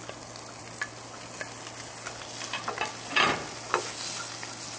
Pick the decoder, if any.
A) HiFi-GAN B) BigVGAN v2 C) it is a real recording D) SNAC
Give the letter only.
C